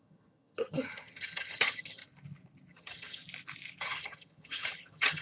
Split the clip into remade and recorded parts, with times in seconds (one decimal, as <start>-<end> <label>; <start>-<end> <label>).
0.0-2.0 remade; 2.0-2.7 recorded; 2.7-3.2 remade; 3.2-3.8 recorded; 3.8-5.2 remade